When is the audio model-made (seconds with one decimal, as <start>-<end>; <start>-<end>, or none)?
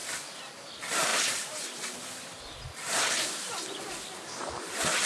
none